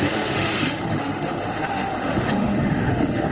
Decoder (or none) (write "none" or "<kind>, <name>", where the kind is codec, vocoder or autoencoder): autoencoder, DAC-VAE